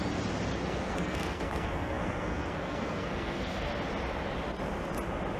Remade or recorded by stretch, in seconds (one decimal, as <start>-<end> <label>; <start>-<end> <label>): 0.0-0.5 recorded; 0.5-3.7 remade; 3.7-5.4 recorded

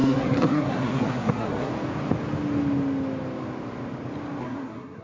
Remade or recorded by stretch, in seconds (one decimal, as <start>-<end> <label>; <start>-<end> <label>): 0.0-1.7 remade; 1.7-4.4 recorded; 4.4-5.0 remade